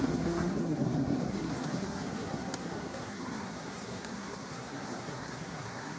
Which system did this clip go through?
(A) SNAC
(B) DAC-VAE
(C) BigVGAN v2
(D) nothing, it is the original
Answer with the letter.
A